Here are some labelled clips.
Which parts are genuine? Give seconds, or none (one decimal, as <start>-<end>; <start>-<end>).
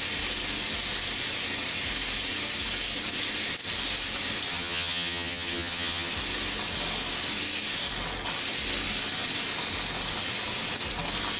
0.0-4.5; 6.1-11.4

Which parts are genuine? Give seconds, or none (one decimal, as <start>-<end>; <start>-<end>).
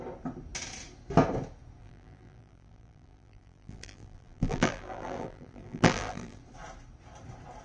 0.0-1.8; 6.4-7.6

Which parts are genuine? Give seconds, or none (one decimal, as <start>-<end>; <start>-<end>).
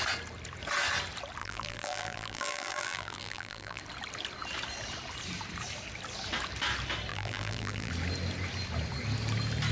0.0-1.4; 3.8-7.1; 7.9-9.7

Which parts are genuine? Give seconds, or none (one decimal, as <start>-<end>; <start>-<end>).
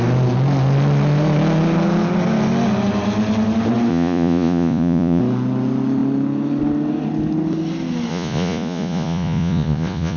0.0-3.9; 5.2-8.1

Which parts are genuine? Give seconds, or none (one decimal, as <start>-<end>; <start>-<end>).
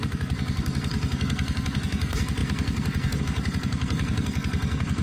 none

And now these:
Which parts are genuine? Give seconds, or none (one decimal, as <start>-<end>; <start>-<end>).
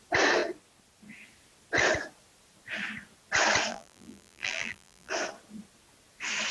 0.0-3.7; 5.1-6.5